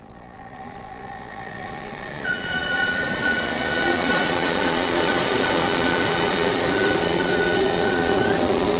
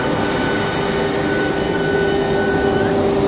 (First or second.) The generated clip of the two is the first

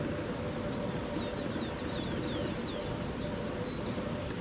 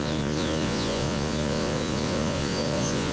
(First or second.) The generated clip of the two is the second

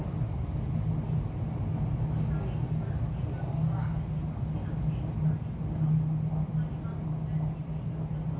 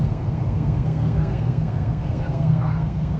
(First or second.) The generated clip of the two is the second